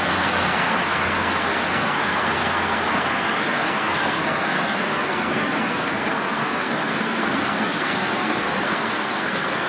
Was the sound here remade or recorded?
remade